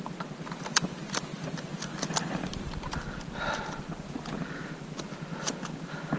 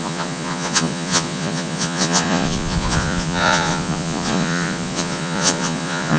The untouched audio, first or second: first